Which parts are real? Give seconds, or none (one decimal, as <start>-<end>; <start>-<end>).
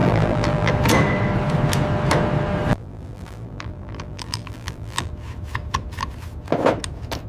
0.7-2.7; 5.1-7.3